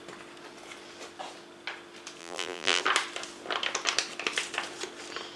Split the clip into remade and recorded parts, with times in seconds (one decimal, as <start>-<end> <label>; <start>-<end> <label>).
0.0-2.2 recorded; 2.2-2.8 remade; 2.8-5.4 recorded